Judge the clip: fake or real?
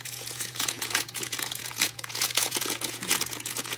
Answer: fake